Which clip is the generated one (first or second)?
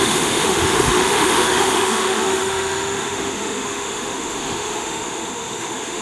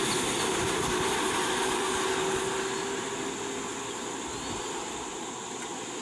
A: first